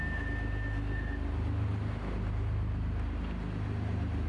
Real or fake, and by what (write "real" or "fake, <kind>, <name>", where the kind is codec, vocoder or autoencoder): real